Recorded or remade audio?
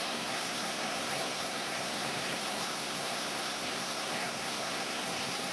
remade